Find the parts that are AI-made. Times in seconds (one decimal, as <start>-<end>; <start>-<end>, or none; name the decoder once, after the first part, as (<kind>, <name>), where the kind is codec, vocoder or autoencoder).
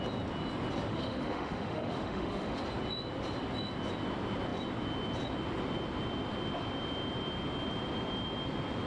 0.9-2.6 (autoencoder, DAC-VAE)